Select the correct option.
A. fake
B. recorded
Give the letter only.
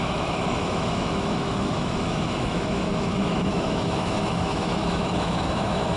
A